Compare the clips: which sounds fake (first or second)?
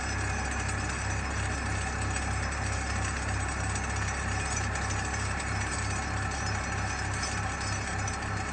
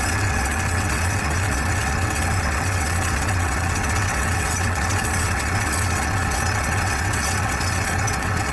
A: second